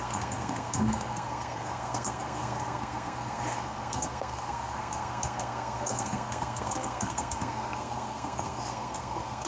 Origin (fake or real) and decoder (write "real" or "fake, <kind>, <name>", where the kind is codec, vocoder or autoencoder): fake, codec, SNAC